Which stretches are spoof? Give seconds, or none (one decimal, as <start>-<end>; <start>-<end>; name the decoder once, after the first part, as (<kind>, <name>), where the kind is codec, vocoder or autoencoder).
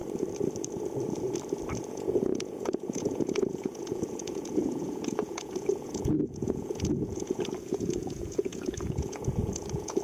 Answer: 1.9-10.0 (vocoder, Vocos)